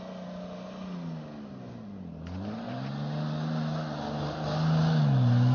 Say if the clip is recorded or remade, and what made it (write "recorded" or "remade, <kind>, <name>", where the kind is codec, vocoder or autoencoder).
recorded